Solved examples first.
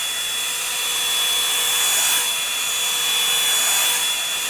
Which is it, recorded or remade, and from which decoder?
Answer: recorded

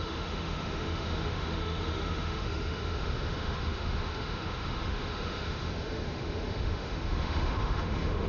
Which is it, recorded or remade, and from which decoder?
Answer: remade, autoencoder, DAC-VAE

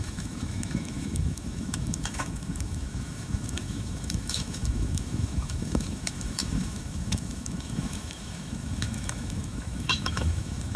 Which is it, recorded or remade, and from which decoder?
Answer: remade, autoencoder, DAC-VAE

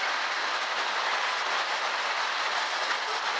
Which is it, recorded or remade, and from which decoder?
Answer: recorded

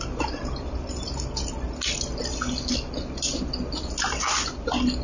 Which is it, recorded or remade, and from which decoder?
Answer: recorded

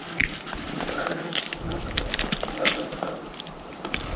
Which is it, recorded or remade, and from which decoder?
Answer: recorded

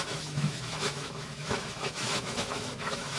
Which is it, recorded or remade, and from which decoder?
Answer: remade, autoencoder, DAC-VAE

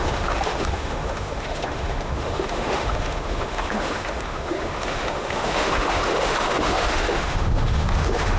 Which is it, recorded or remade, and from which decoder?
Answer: remade, autoencoder, DAC-VAE